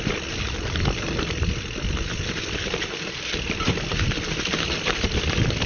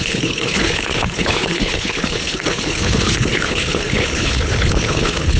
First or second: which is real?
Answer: first